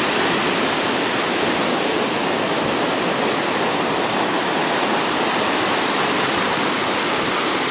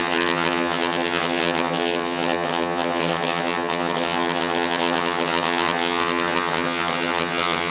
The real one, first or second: first